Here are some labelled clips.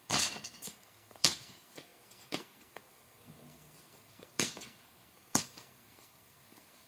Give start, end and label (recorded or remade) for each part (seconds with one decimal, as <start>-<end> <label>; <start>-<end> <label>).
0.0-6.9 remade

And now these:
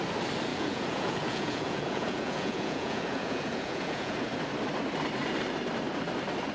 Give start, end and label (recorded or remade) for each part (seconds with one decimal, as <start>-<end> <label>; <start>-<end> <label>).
0.0-0.5 recorded; 0.5-4.2 remade; 4.2-6.5 recorded

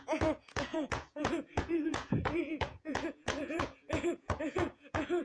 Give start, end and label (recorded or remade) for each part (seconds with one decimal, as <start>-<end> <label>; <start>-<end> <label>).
0.0-5.2 remade

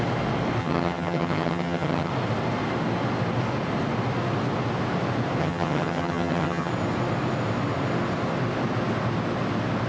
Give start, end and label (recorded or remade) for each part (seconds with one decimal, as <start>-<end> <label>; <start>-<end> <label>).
0.0-0.6 recorded; 0.6-2.1 remade; 2.1-5.4 recorded; 5.4-6.7 remade; 6.7-9.9 recorded

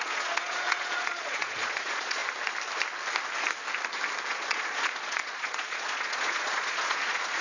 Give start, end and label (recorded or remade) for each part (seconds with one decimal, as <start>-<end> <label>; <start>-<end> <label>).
0.0-2.2 remade; 2.2-4.3 recorded; 4.3-7.4 remade